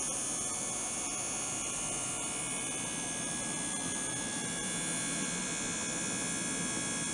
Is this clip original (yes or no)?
yes